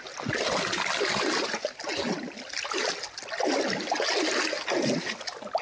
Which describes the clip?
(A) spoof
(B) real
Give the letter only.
B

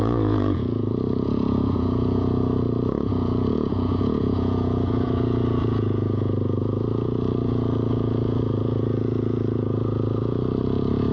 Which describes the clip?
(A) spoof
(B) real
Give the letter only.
A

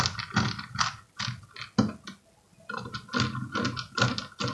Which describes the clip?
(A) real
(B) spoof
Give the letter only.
A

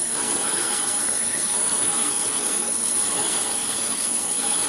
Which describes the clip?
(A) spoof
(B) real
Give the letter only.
A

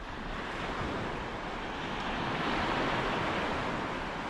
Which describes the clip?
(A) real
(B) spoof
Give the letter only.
A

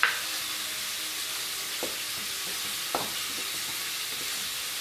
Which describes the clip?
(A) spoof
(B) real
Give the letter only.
B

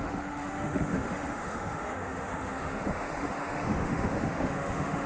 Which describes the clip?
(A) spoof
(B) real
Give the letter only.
A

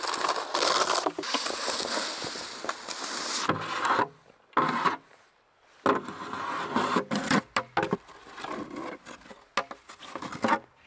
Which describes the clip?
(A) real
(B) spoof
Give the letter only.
A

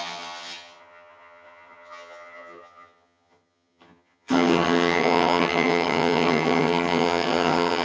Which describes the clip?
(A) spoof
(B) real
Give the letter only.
A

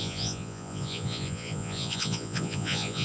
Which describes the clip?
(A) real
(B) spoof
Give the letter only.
B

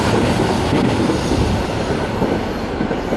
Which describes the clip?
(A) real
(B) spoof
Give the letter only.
A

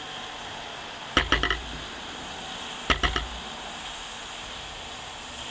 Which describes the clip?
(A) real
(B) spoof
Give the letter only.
A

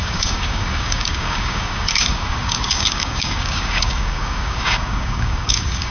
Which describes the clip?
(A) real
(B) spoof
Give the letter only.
B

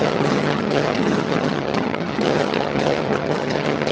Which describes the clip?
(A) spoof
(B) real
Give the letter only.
A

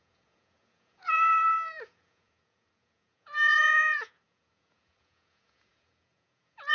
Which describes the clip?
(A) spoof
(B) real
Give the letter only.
A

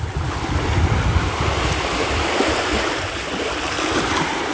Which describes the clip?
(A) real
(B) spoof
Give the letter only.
A